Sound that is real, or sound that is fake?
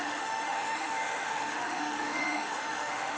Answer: fake